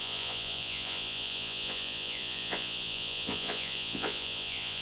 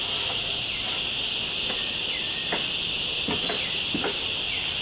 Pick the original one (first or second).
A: second